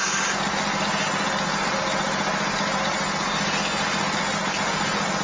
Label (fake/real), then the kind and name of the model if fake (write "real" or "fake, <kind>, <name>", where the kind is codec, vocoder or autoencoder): real